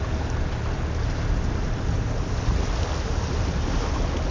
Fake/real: real